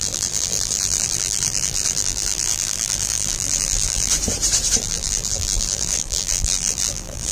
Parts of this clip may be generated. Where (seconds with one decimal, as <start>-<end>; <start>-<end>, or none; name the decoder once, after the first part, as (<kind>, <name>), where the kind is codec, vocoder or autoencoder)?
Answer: 0.0-4.1 (vocoder, BigVGAN v2); 4.8-7.3